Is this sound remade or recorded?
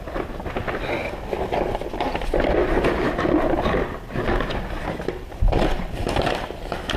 recorded